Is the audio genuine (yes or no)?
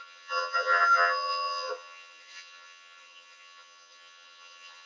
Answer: no